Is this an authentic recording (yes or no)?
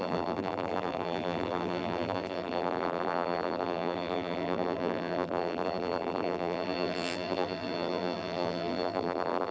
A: no